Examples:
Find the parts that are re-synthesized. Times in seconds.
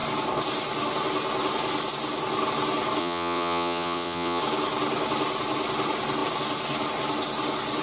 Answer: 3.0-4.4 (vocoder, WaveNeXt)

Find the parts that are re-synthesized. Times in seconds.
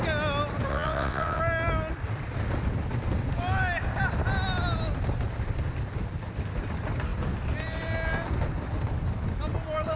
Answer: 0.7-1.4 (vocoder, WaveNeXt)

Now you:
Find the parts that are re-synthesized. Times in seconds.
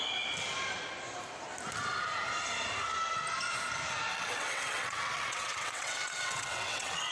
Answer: 4.1-7.1 (vocoder, WaveNeXt)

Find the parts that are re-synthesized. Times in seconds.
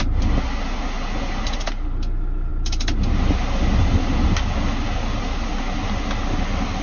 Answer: none